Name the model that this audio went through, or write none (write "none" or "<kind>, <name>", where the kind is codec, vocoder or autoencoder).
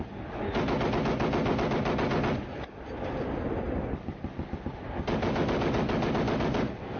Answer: none